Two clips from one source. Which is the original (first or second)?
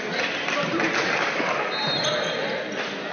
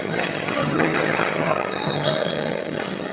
first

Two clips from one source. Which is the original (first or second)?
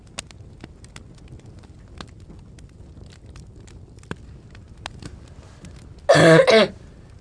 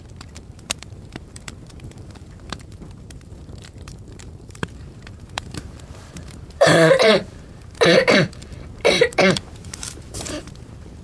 first